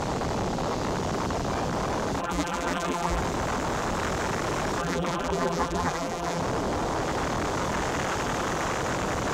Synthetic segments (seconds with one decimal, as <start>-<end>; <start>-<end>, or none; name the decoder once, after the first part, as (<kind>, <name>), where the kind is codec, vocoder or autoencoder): 2.2-3.2 (vocoder, BigVGAN v2); 4.8-6.4